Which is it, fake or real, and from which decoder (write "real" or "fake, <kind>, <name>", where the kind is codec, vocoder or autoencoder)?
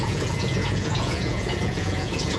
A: fake, vocoder, Vocos